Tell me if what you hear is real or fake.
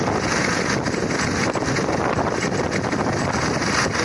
real